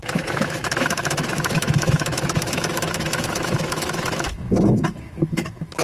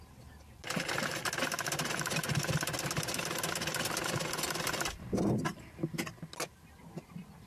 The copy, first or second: first